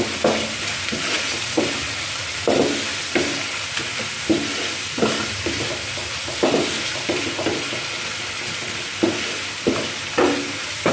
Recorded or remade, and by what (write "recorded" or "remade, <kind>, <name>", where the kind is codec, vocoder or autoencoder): recorded